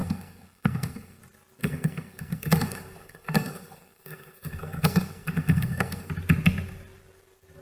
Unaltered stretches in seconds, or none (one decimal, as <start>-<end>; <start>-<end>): 1.2-1.6; 6.1-7.6